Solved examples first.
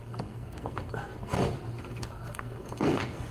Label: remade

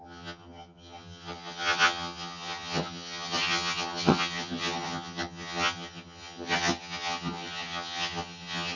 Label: remade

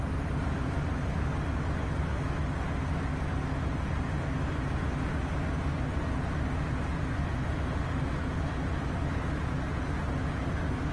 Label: recorded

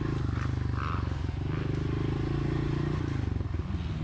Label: recorded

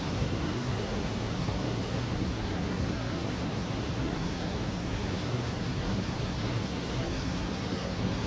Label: remade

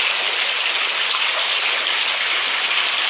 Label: recorded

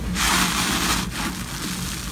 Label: recorded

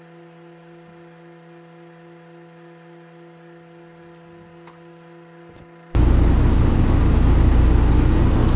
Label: recorded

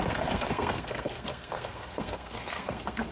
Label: remade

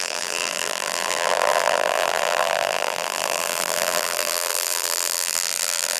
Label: remade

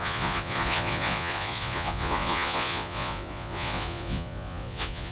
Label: remade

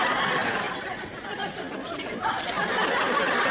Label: recorded